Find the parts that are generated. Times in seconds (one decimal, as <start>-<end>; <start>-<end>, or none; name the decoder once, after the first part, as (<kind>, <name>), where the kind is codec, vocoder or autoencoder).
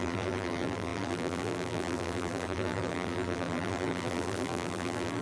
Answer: 0.0-5.2 (vocoder, BigVGAN v2)